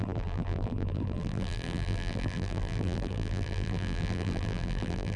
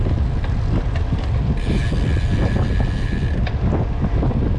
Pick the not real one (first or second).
first